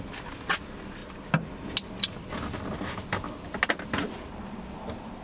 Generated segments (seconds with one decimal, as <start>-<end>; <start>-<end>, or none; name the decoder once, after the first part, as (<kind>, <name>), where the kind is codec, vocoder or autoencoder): none